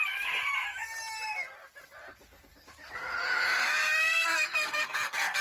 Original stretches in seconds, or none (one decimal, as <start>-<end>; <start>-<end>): 0.0-4.0

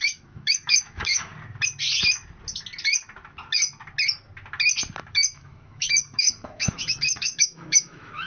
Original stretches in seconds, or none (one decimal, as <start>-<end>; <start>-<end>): 1.3-5.1

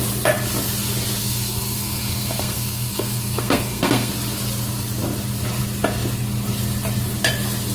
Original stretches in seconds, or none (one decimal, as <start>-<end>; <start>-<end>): 0.0-1.2; 4.1-7.7

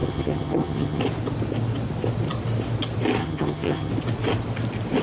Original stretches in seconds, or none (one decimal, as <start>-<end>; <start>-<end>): 1.0-3.2; 3.9-5.0